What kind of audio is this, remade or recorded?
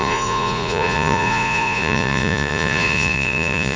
remade